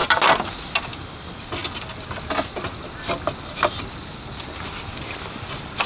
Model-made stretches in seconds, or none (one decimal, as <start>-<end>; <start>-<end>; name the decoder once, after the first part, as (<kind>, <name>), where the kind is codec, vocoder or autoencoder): none